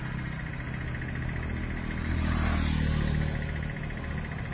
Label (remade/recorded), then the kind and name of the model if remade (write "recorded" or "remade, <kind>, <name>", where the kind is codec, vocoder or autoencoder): recorded